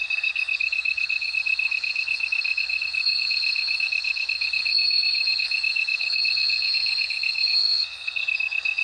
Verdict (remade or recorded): remade